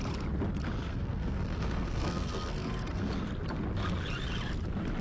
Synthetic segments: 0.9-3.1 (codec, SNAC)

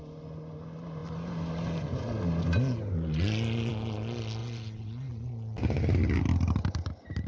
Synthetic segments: 4.4-5.3 (vocoder, Vocos)

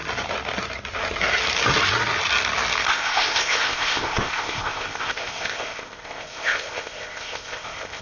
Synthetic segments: 2.9-8.0 (codec, ZipCodec)

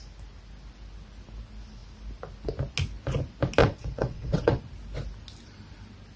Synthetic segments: 3.6-4.6 (vocoder, WaveNeXt)

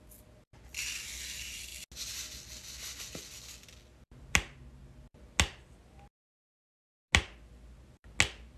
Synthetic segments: none

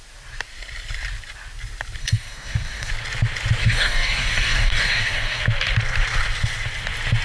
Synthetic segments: 2.0-2.9 (codec, DAC); 3.6-5.4

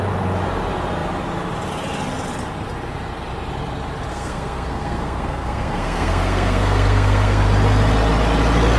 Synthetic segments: 4.1-7.4 (codec, SNAC)

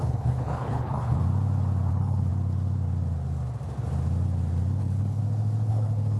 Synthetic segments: 0.0-1.2 (codec, HILCodec); 1.9-2.3; 4.8-5.2; 5.7-6.2